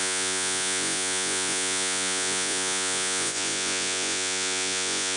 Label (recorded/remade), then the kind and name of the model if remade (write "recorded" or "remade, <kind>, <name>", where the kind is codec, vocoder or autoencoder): remade, vocoder, Vocos